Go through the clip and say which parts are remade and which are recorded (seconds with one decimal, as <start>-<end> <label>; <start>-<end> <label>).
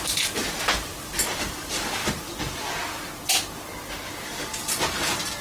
0.0-2.0 remade; 2.0-5.4 recorded